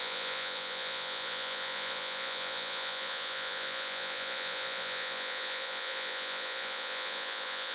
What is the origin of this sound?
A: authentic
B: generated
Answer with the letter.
B